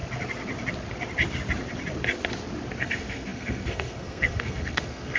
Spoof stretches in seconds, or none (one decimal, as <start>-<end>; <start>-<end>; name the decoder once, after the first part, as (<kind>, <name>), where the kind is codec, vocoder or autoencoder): 2.8-5.2 (codec, SNAC)